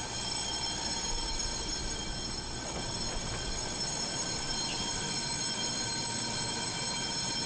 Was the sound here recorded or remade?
remade